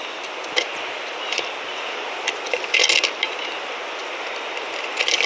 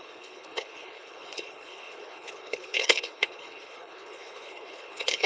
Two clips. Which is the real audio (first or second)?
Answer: first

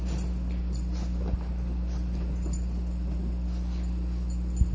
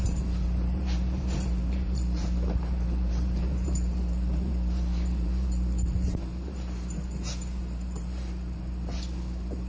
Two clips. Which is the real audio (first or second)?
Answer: first